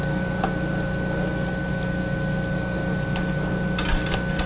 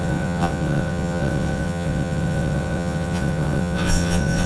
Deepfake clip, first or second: second